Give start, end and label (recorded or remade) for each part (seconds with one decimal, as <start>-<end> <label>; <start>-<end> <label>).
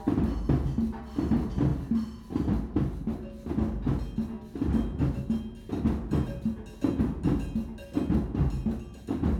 0.0-9.4 recorded